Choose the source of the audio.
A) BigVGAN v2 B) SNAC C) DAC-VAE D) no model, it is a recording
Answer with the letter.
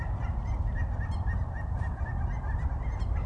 D